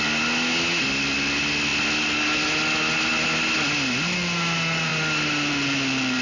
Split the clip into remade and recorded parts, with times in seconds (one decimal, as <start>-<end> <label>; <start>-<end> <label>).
0.0-6.2 recorded